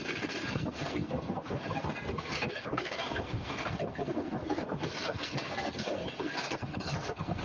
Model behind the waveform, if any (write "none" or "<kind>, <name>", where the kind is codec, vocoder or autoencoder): codec, SNAC